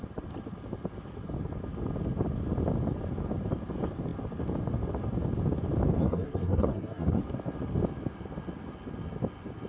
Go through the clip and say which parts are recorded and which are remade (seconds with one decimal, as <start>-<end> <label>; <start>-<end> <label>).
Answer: 0.0-6.0 recorded; 6.0-7.2 remade; 7.2-9.7 recorded